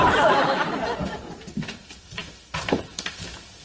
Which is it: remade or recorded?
remade